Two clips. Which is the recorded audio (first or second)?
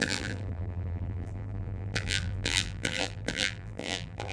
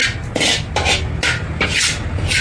second